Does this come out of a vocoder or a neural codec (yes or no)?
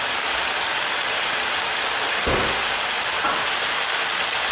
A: no